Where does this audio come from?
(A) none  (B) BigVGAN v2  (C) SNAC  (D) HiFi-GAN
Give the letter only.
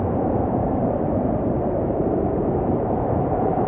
B